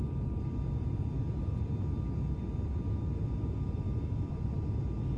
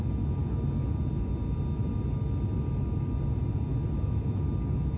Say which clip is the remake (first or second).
first